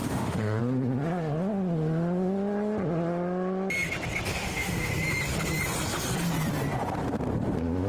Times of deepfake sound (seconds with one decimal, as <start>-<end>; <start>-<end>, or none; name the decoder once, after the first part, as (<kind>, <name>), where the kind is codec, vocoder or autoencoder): 0.0-0.6 (autoencoder, DAC-VAE); 4.3-4.9